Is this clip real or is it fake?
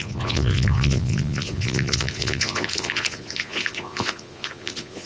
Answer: fake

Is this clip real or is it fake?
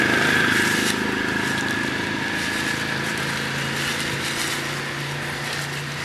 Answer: real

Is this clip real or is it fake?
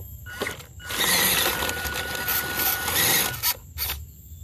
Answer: real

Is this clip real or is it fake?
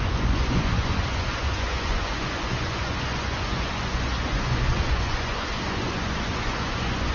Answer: fake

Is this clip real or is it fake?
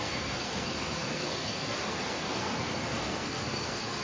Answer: fake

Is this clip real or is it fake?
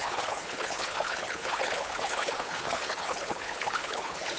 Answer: fake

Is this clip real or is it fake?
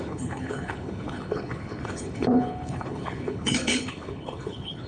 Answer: fake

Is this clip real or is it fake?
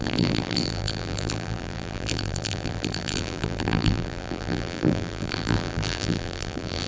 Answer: fake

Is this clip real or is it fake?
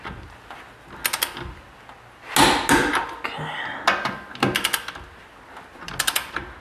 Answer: real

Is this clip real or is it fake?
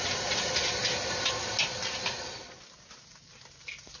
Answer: real